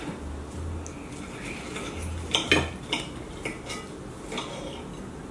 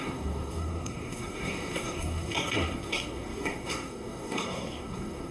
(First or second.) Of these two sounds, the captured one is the first